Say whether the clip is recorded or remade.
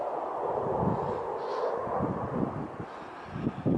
recorded